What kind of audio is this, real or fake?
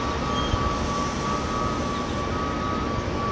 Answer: real